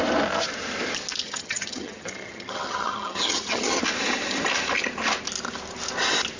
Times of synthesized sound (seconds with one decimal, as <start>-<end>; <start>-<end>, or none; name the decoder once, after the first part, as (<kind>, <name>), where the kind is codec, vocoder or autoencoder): 1.2-3.8 (vocoder, HiFi-GAN)